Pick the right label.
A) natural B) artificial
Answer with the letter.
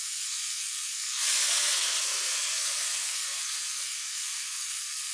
B